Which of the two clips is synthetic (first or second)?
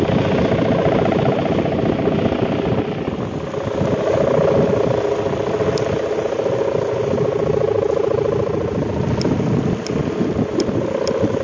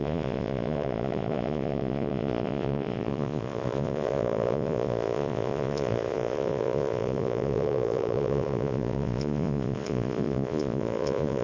second